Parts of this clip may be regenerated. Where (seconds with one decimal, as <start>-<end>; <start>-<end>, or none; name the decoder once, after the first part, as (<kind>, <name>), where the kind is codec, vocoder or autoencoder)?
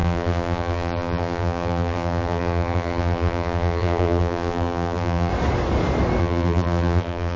0.0-5.3 (vocoder, BigVGAN v2); 6.2-7.4